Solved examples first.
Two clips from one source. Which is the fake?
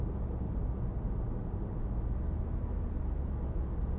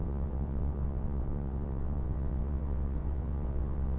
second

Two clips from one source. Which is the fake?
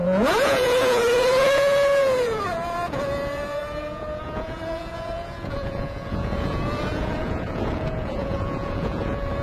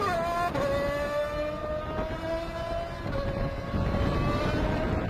first